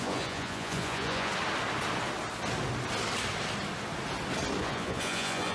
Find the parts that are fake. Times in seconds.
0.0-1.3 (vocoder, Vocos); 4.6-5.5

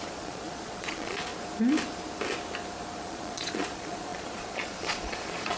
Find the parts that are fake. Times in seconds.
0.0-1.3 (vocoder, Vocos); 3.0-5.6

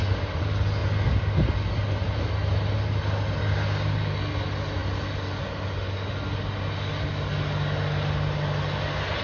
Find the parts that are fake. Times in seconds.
none

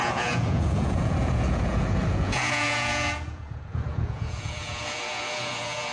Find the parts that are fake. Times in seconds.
0.0-5.9 (vocoder, Vocos)

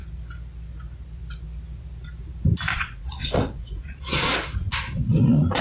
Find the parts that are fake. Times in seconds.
2.7-5.6 (vocoder, Vocos)

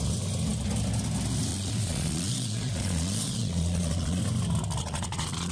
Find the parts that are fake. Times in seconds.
1.5-4.2 (vocoder, Vocos); 4.8-5.5

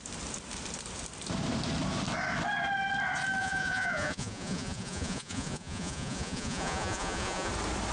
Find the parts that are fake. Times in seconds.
3.4-7.5 (vocoder, Vocos)

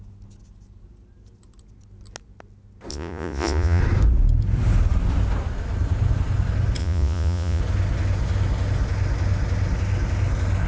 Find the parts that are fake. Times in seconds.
2.9-3.8 (vocoder, Vocos); 6.8-7.6